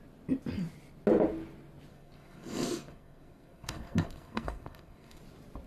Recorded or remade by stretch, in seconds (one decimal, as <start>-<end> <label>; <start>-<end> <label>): 0.0-1.9 recorded; 1.9-5.2 remade; 5.2-5.7 recorded